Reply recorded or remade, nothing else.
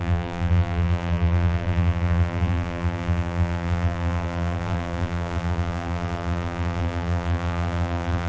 remade